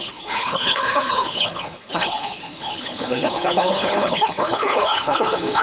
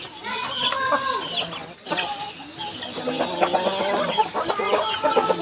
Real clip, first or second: second